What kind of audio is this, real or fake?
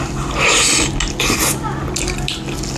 real